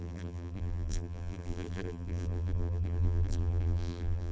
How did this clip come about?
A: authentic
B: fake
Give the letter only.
B